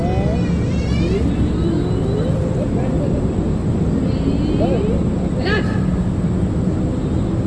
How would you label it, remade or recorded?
recorded